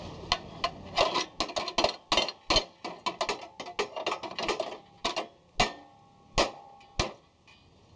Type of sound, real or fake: real